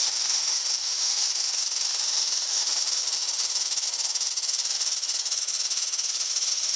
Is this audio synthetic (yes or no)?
yes